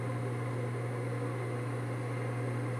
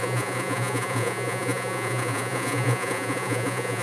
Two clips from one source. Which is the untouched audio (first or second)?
first